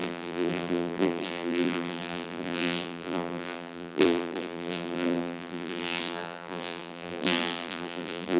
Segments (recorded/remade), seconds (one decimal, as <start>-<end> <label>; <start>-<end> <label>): 0.0-8.4 remade